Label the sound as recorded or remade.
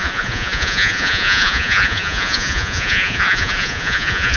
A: remade